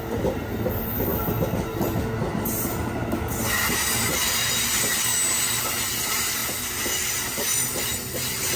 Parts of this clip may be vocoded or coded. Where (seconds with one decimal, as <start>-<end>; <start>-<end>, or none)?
4.2-4.8